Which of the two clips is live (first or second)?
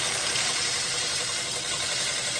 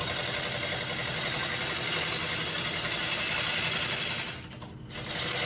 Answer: second